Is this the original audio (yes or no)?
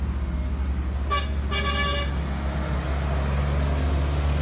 yes